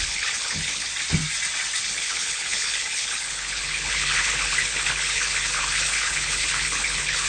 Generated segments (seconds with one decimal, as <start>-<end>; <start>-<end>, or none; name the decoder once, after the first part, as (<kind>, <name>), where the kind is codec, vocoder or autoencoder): 0.0-0.9 (codec, HILCodec); 1.9-7.3